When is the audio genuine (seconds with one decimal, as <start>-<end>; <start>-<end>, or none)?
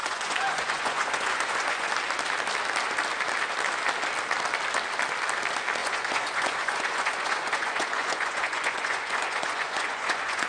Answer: 1.9-5.8